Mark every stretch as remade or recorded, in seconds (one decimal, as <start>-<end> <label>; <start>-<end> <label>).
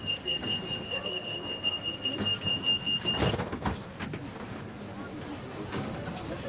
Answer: 0.0-2.5 remade; 2.5-3.3 recorded; 3.3-3.7 remade; 3.7-6.5 recorded